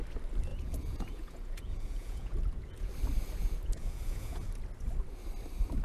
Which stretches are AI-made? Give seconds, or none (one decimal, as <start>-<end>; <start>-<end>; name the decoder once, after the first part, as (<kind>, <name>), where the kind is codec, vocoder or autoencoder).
0.5-2.9 (vocoder, Vocos); 3.4-4.5